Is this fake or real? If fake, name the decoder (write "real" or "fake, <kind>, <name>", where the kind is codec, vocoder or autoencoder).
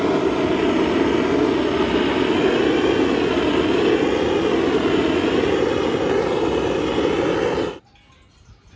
real